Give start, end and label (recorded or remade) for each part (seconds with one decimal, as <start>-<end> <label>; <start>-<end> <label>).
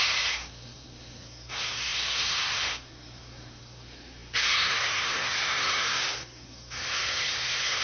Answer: 0.0-7.8 remade